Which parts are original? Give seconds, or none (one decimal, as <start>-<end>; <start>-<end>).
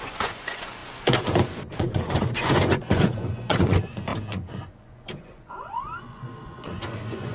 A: none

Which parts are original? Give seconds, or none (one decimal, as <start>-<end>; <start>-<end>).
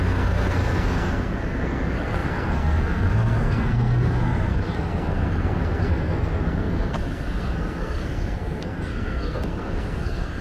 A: none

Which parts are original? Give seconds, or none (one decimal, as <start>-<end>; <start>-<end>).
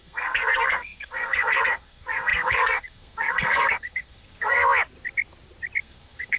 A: 4.6-5.8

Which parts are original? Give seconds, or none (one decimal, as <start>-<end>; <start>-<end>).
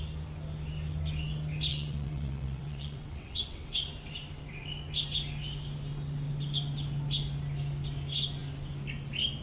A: 0.0-1.7; 3.9-9.4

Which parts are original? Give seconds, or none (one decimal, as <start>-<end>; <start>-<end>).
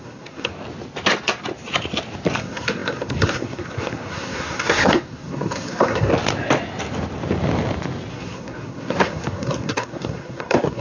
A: 0.5-2.4; 6.1-8.1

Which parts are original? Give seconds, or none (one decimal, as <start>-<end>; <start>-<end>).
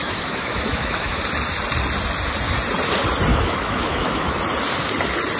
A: 1.2-3.3; 4.4-5.4